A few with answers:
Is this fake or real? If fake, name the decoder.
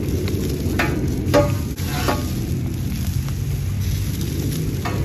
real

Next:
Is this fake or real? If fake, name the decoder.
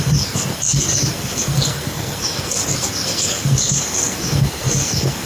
fake, codec, SNAC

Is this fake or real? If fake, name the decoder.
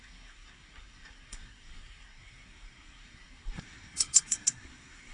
fake, codec, SNAC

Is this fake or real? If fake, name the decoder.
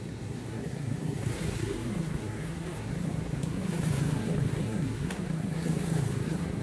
fake, codec, SNAC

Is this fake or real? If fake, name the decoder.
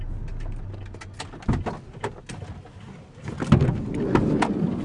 real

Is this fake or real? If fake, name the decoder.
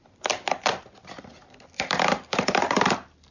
real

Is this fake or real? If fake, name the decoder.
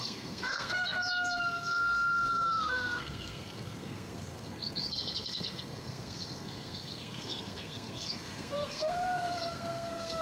fake, codec, SNAC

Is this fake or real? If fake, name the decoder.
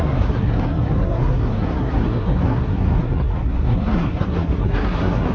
fake, codec, SNAC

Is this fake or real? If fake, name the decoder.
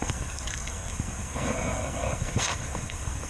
fake, codec, SNAC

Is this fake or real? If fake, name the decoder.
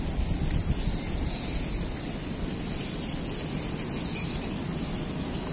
real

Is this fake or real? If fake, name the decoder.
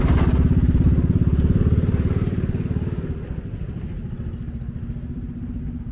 real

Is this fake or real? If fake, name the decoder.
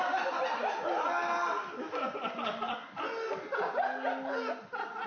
real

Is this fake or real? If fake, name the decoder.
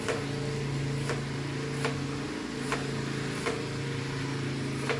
real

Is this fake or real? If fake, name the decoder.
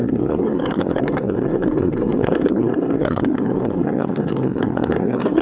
fake, codec, SNAC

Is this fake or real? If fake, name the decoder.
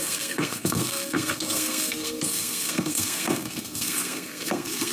fake, codec, SNAC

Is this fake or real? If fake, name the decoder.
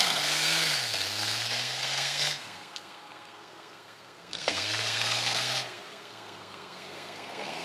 fake, codec, SNAC